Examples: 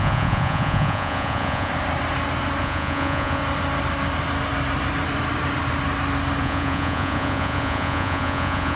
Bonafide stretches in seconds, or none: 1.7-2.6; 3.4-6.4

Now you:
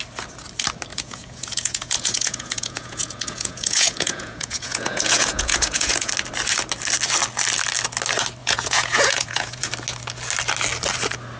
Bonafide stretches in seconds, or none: 0.0-0.9; 6.1-8.4; 9.7-11.4

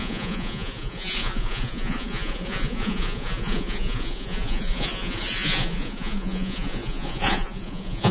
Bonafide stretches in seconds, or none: none

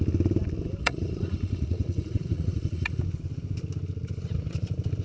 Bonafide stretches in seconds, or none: 0.0-0.8; 3.0-5.0

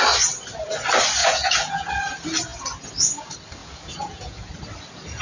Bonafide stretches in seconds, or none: 0.0-1.2; 1.9-3.6; 4.5-5.2

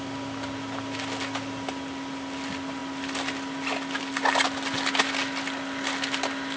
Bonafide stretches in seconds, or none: 0.0-6.6

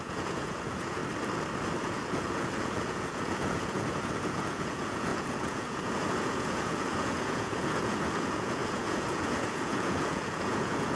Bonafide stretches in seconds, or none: 1.0-1.8

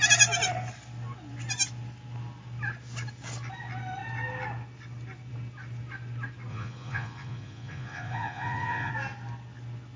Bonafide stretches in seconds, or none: 0.0-6.5; 8.9-10.0